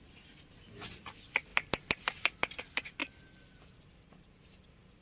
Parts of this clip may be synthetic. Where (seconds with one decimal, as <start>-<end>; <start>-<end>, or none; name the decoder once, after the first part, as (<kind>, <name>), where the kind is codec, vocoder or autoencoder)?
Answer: none